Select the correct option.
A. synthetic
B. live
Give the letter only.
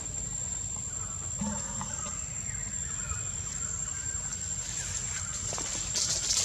B